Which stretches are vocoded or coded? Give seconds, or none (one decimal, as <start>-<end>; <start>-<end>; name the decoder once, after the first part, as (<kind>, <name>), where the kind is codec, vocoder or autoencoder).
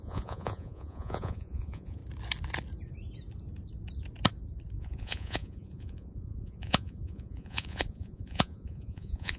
0.0-2.0 (vocoder, Vocos); 4.8-9.4